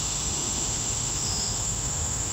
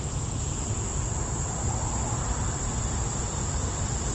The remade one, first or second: first